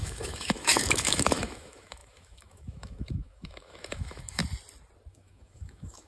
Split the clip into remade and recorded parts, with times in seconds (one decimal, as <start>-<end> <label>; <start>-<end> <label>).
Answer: 0.0-4.4 remade; 4.4-5.1 recorded; 5.1-6.1 remade